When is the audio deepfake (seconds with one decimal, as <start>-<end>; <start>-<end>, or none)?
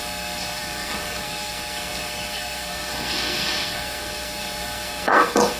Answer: 0.0-5.6